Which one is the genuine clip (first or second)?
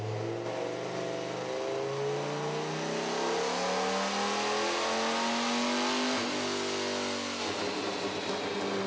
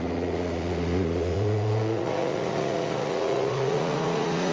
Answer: first